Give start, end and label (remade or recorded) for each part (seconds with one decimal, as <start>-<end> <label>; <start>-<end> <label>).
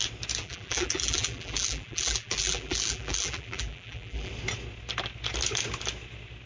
0.0-0.4 recorded; 0.4-4.3 remade; 4.3-6.5 recorded